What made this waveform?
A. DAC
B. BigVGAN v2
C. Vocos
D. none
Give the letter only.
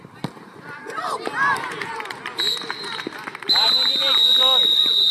B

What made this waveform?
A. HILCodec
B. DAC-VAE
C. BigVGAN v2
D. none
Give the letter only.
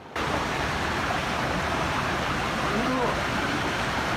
C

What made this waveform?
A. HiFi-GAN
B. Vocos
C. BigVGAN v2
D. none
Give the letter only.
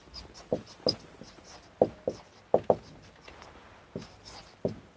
D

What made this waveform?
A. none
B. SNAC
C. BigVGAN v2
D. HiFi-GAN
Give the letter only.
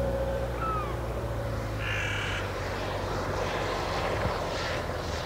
A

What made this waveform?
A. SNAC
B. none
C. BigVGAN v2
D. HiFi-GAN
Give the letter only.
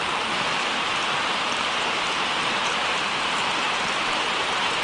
C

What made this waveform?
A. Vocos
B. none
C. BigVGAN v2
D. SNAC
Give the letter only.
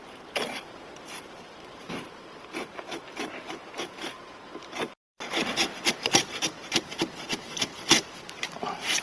C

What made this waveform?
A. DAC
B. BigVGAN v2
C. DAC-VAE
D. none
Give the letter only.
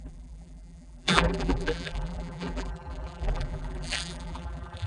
B